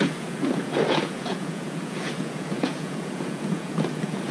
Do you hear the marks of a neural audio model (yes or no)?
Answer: yes